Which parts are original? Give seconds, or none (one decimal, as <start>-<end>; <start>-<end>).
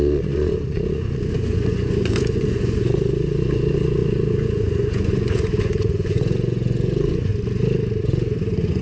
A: 7.3-8.0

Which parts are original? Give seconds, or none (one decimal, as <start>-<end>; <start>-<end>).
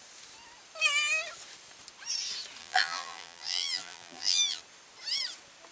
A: 0.0-2.6; 4.6-5.7